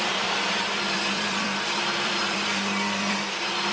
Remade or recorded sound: remade